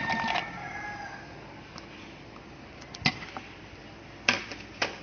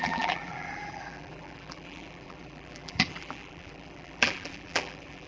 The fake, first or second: second